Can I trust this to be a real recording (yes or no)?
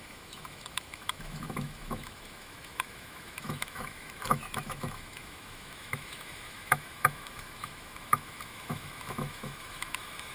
no